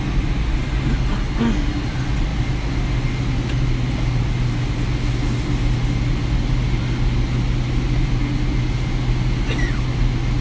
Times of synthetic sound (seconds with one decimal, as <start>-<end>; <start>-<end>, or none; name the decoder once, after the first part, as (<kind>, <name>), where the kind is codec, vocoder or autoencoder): none